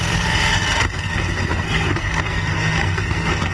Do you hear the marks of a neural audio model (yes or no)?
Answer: yes